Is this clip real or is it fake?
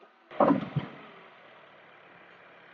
real